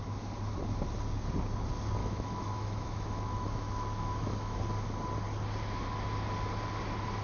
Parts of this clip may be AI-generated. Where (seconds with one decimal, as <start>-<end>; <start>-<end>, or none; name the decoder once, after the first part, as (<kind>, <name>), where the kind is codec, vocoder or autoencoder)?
2.0-4.6 (autoencoder, DAC-VAE)